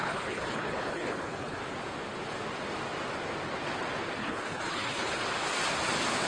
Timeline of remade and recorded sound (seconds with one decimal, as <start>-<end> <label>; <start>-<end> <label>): 0.0-1.6 remade; 1.6-4.2 recorded; 4.2-5.2 remade; 5.2-6.3 recorded